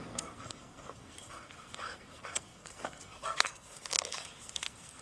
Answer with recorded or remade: remade